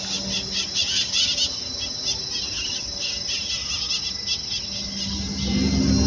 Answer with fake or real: real